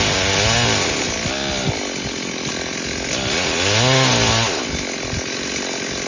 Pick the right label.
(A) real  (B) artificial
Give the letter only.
A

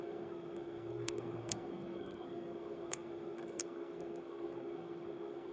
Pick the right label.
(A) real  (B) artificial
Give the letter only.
B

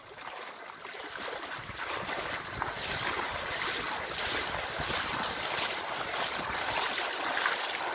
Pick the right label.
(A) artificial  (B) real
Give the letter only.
B